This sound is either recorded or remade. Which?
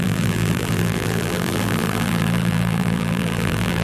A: remade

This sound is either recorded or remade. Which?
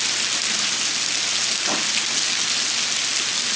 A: recorded